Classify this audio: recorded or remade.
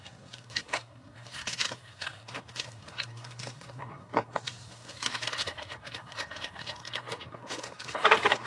remade